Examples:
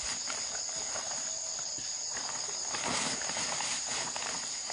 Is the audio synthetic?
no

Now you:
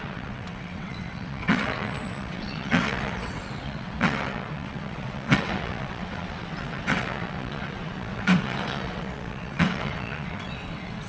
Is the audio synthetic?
yes